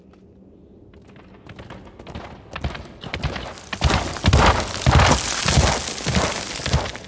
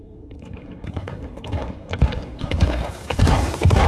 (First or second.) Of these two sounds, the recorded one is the first